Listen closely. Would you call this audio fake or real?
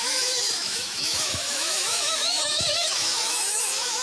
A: fake